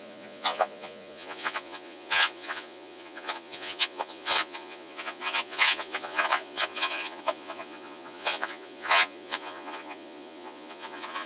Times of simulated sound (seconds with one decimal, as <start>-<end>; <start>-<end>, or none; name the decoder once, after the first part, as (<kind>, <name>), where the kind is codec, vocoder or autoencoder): 0.0-11.3 (vocoder, Vocos)